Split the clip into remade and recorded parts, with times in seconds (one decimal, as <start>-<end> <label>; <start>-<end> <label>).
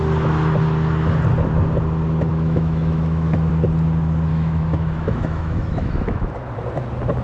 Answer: 0.0-2.3 recorded; 2.3-3.5 remade; 3.5-4.3 recorded; 4.3-6.3 remade; 6.3-7.2 recorded